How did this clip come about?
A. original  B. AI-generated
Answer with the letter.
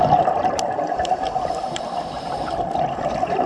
A